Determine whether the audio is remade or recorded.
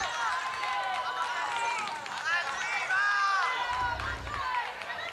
recorded